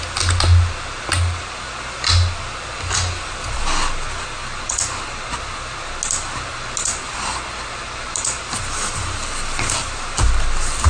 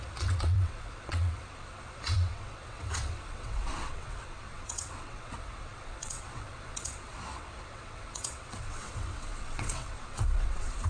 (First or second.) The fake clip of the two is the second